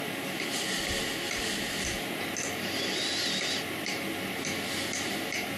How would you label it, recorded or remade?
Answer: recorded